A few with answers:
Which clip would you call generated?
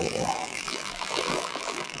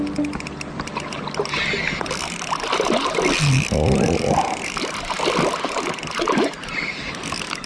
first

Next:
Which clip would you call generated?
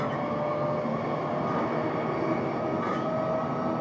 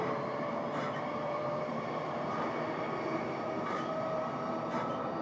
second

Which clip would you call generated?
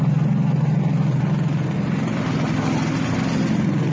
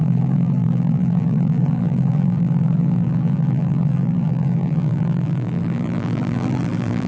second